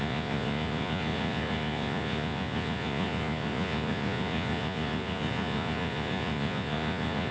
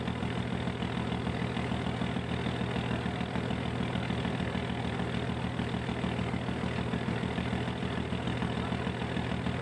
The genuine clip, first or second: second